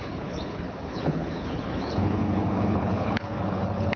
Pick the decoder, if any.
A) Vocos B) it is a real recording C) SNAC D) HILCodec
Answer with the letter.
D